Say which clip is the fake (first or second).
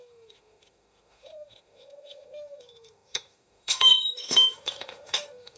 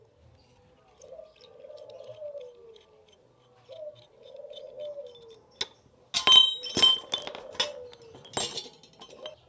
first